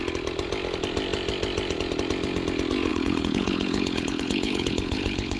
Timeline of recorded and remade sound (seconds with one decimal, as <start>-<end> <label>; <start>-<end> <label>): 0.0-2.9 recorded; 2.9-5.4 remade

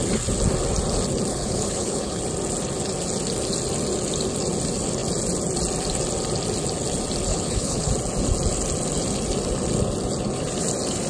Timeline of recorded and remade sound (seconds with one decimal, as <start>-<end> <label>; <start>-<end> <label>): 0.0-1.3 recorded; 1.3-2.2 remade; 2.2-7.3 recorded; 7.3-7.9 remade; 7.9-11.1 recorded

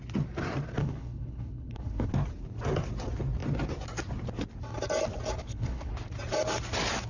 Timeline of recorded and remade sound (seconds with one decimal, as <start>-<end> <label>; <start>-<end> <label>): 0.0-0.8 recorded; 0.8-2.1 remade; 2.1-5.4 recorded; 5.4-5.9 remade; 5.9-7.1 recorded

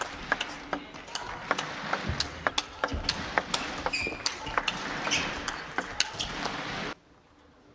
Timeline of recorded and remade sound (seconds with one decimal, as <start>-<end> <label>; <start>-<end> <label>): 0.0-7.7 recorded